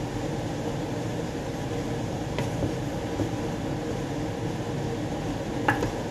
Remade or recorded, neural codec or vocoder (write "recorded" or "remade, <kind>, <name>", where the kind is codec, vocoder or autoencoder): recorded